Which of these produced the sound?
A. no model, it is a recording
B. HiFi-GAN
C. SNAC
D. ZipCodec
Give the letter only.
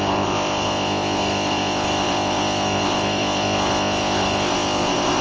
D